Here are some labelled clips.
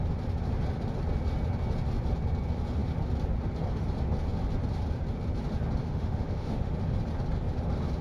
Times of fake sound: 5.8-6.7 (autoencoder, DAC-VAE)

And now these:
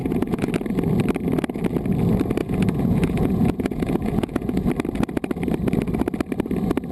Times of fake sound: 0.0-0.5 (vocoder, Vocos); 2.4-4.7